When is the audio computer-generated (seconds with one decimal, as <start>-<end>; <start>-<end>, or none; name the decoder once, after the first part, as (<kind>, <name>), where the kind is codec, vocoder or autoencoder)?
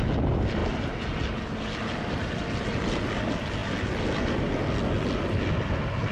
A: none